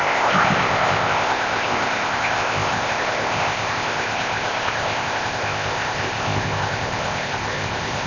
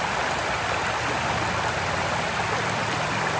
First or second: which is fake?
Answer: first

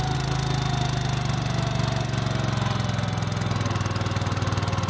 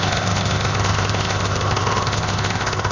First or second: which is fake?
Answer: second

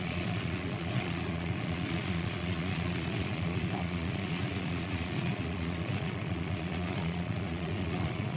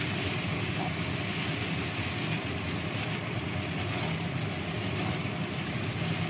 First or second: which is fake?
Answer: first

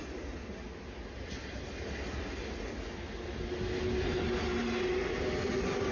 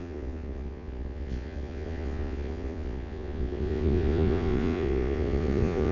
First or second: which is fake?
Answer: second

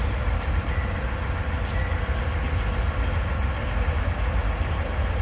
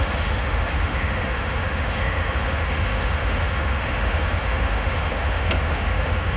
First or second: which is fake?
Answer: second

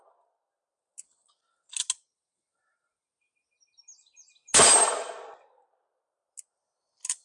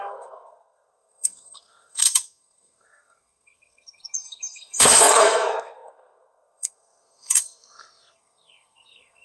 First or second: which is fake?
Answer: second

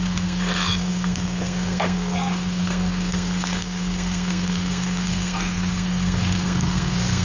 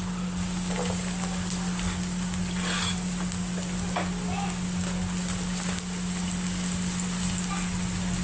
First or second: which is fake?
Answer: first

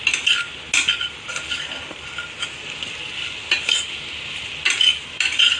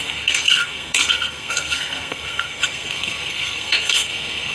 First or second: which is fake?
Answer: second